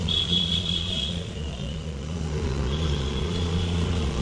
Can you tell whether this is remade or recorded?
remade